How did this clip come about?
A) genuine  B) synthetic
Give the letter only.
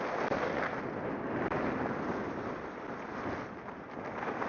A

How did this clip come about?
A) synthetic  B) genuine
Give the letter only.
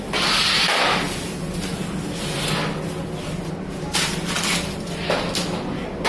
B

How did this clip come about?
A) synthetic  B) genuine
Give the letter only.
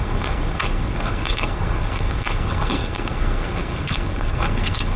A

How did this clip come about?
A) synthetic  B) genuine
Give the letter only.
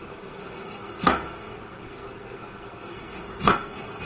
A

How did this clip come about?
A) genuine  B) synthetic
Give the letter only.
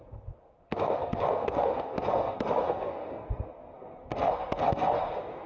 B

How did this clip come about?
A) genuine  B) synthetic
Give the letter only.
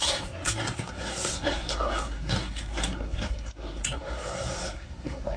B